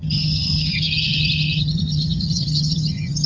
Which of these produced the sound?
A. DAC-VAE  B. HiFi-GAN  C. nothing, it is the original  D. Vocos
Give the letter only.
B